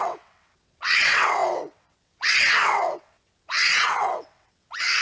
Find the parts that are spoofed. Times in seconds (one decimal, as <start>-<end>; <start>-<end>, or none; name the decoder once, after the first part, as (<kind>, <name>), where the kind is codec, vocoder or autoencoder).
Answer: 0.0-5.0 (vocoder, WaveNeXt)